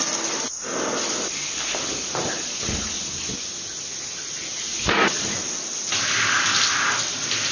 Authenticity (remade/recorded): recorded